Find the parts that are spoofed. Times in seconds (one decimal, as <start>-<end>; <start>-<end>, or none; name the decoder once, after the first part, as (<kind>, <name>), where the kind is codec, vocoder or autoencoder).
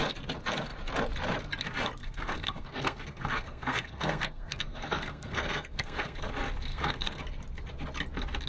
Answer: 2.0-6.3 (codec, SNAC); 6.7-7.2